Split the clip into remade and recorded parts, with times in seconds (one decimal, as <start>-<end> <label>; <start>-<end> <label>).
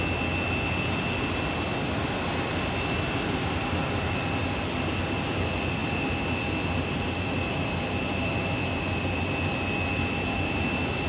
0.0-11.1 recorded